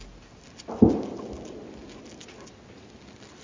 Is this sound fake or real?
real